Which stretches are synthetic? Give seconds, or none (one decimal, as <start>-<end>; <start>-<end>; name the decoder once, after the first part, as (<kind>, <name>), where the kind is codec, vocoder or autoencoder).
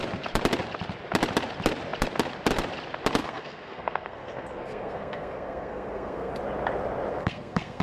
3.2-6.3 (codec, SNAC); 7.1-7.8